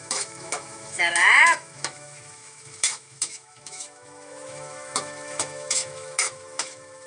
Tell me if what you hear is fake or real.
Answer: fake